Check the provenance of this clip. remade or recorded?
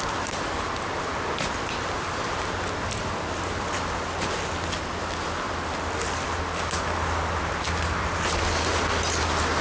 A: recorded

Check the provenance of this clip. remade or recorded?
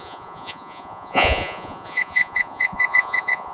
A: remade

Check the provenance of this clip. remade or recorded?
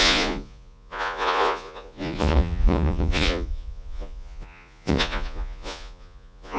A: remade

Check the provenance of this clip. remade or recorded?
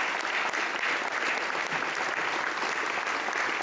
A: recorded